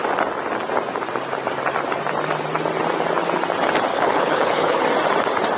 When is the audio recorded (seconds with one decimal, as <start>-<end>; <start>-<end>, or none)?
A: 0.0-3.9; 4.8-5.6